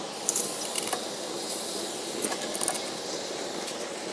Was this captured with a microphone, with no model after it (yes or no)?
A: yes